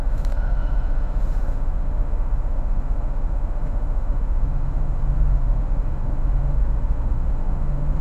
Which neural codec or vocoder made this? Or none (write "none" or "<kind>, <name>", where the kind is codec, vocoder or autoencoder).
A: autoencoder, DAC-VAE